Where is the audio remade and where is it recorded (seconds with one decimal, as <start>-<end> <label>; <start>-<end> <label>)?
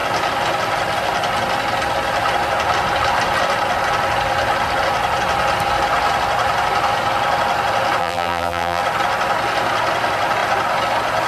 0.0-8.0 recorded; 8.0-8.8 remade; 8.8-11.3 recorded